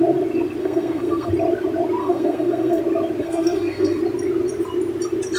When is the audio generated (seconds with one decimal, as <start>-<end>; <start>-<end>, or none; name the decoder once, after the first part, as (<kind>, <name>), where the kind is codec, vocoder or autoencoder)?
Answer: 0.6-1.3 (codec, SNAC); 2.0-2.8; 3.2-4.0